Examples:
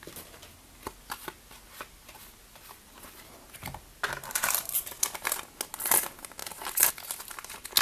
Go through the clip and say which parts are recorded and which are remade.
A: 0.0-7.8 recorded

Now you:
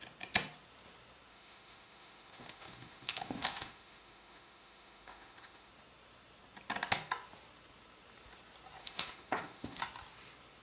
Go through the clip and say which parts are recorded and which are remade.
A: 0.0-1.3 recorded; 1.3-5.7 remade; 5.7-8.8 recorded; 8.8-9.8 remade; 9.8-10.6 recorded